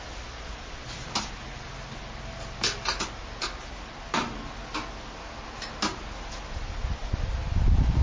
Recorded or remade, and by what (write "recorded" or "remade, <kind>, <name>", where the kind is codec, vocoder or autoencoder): recorded